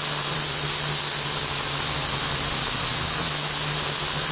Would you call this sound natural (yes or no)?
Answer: yes